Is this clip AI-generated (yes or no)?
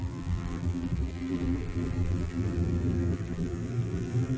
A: yes